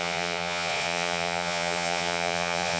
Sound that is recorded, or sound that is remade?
remade